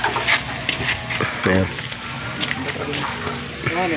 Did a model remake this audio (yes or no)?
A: no